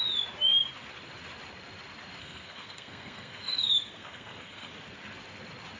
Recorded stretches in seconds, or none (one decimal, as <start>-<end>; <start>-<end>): 0.0-2.2; 4.7-5.8